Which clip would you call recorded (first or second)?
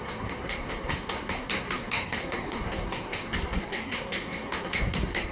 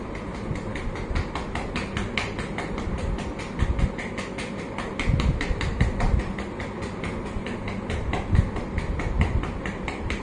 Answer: second